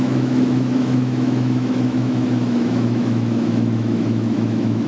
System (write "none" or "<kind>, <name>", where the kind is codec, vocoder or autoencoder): autoencoder, DAC-VAE